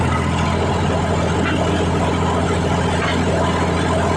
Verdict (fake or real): real